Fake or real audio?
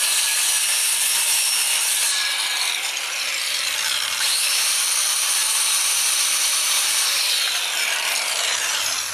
fake